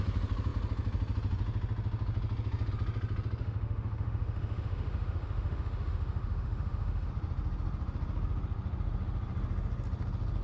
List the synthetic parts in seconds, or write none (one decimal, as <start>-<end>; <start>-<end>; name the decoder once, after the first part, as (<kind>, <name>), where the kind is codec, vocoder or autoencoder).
3.4-7.1 (autoencoder, DAC-VAE)